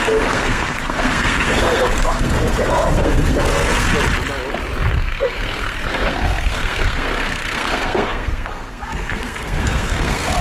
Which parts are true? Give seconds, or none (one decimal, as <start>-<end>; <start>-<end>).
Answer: 3.9-4.9